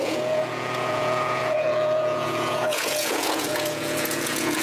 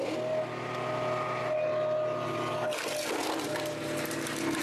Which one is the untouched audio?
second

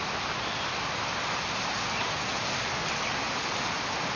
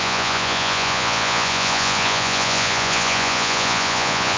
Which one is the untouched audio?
first